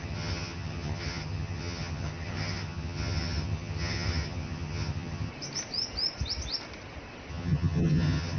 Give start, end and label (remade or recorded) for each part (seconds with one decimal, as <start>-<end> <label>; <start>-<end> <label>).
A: 0.0-5.3 remade; 5.3-7.3 recorded; 7.3-8.4 remade